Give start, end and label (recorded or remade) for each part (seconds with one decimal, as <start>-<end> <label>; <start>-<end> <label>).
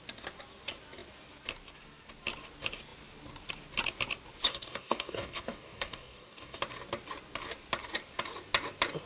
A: 0.0-4.5 recorded; 4.5-6.6 remade; 6.6-9.1 recorded